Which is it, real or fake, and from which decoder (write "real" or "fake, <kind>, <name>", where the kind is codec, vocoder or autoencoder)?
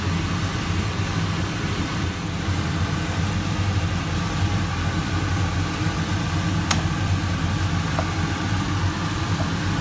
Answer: real